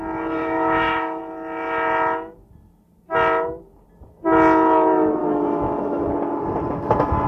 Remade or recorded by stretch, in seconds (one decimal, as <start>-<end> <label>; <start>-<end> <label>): 0.0-0.4 recorded; 0.4-1.2 remade; 1.2-5.2 recorded; 5.2-6.1 remade; 6.1-7.3 recorded